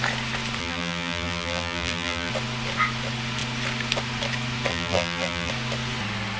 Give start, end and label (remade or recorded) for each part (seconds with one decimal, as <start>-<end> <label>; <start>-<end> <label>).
0.0-0.6 recorded; 0.6-2.3 remade; 2.3-4.7 recorded; 4.7-5.5 remade; 5.5-6.4 recorded